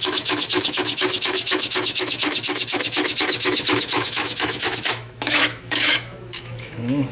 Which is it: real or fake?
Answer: fake